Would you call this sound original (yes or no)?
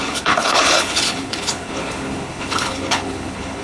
no